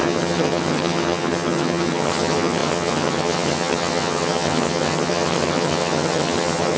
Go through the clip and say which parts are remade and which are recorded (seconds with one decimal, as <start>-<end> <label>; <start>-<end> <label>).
0.0-6.8 remade